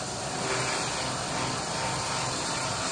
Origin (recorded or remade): recorded